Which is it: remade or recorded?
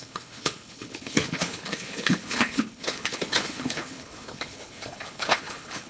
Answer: remade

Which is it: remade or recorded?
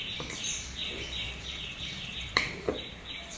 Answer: remade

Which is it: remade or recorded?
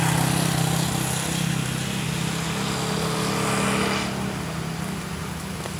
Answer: recorded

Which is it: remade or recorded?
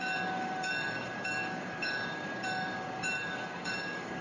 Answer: remade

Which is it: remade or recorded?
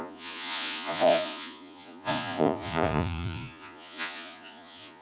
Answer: remade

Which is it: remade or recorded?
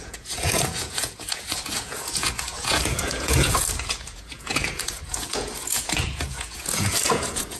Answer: remade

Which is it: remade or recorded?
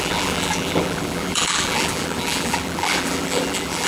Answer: remade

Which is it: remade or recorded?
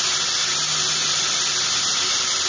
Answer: recorded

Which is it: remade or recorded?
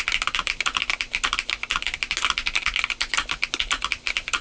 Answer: recorded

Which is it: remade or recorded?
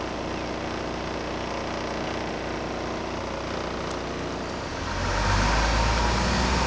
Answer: recorded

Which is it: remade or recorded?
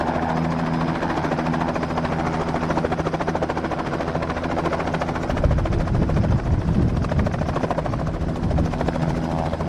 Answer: recorded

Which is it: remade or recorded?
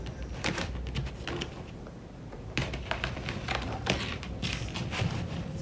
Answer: remade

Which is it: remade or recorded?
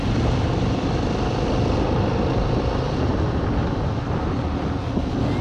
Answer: recorded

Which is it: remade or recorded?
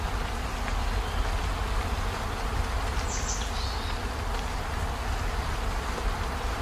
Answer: recorded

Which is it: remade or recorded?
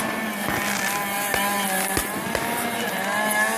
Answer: recorded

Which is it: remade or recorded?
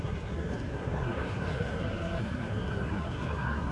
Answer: remade